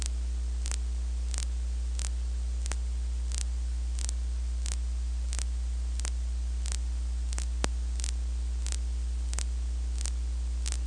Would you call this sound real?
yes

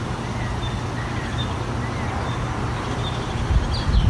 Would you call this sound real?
yes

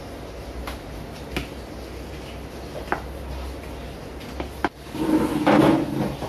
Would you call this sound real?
yes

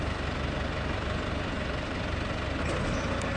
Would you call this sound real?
yes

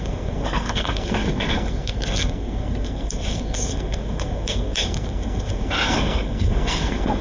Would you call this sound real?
no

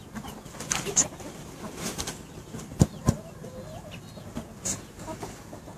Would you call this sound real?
no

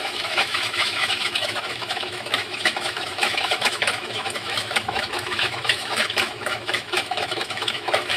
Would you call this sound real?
no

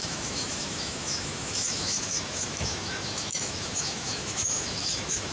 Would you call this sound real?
no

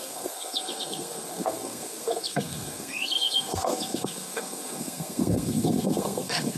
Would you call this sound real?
no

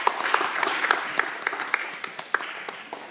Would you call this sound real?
yes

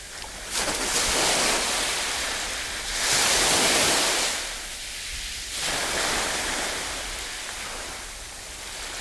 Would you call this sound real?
yes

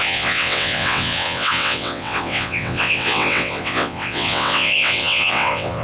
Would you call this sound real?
no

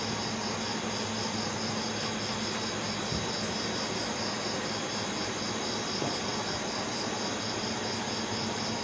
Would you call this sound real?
yes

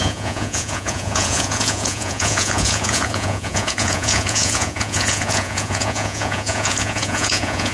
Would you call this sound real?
no